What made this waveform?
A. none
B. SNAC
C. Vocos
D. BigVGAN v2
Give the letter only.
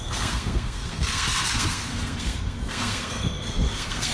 B